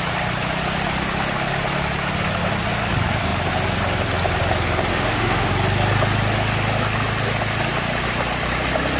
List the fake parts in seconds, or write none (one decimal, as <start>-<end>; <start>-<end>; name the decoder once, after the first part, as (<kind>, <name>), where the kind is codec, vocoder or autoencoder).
4.9-5.5 (autoencoder, DAC-VAE)